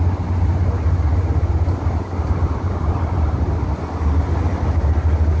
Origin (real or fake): real